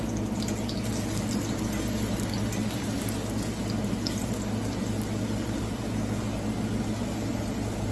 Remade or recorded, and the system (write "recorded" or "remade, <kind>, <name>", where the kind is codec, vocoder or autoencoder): recorded